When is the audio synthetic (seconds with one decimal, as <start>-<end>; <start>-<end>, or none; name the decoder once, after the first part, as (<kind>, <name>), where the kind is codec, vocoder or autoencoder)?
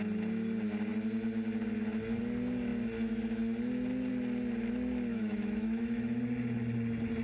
5.1-6.2 (autoencoder, DAC-VAE)